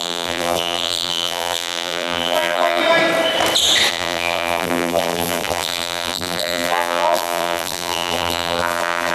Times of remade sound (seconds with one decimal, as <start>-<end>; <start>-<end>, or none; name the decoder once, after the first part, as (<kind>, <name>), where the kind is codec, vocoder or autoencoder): 0.0-2.8 (vocoder, BigVGAN v2); 3.9-9.1